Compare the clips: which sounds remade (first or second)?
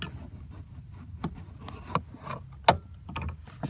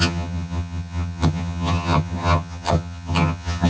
second